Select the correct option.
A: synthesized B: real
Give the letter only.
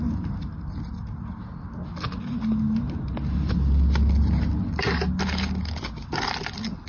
B